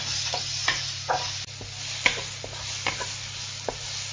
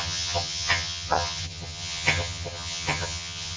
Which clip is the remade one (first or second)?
second